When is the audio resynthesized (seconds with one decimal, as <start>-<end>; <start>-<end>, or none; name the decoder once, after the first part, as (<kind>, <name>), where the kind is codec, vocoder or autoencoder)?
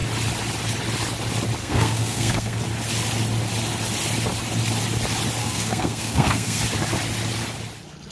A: 1.6-2.6 (codec, SNAC); 5.4-6.6